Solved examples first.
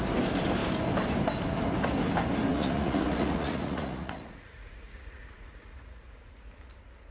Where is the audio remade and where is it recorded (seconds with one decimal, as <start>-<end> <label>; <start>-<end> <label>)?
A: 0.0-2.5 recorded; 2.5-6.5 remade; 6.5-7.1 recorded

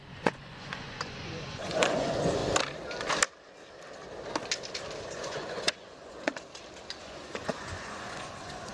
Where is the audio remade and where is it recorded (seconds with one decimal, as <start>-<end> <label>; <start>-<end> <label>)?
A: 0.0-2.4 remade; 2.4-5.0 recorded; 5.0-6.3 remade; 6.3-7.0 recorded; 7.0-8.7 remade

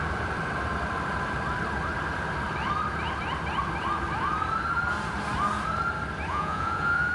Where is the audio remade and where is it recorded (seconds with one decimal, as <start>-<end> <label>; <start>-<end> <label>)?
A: 0.0-6.3 recorded; 6.3-7.1 remade

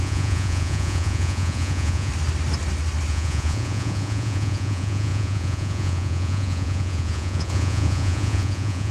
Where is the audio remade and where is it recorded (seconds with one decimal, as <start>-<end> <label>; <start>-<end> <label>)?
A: 0.0-2.1 remade; 2.1-3.1 recorded; 3.1-8.9 remade

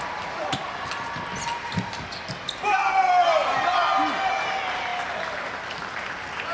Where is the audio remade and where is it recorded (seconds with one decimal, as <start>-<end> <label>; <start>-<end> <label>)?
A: 0.0-6.5 recorded

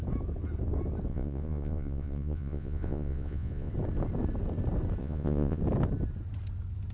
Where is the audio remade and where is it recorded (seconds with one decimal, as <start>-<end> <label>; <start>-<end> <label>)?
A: 0.0-1.1 recorded; 1.1-3.7 remade; 3.7-5.0 recorded; 5.0-5.6 remade; 5.6-6.9 recorded